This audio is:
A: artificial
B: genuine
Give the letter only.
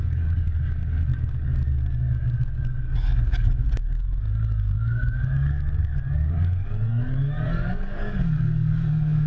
A